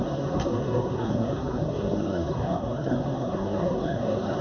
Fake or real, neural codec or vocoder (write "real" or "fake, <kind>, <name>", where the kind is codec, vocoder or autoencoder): fake, codec, SNAC